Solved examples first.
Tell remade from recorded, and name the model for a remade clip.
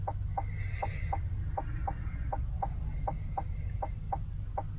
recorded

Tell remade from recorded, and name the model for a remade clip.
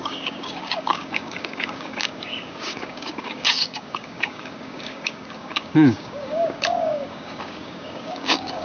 remade, codec, DAC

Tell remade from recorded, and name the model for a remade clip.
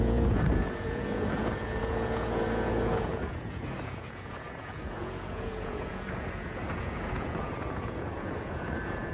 remade, vocoder, Vocos